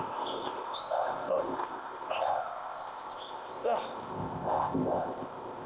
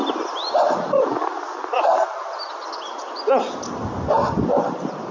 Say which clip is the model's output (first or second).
first